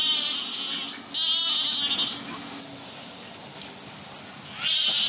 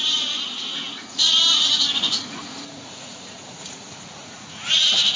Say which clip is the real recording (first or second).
first